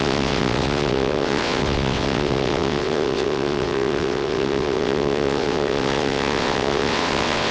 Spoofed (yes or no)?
yes